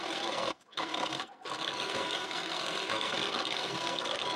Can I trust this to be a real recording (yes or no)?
no